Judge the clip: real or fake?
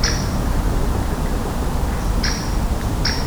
real